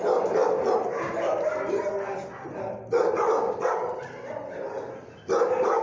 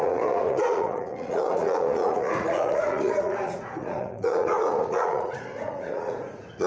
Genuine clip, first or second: first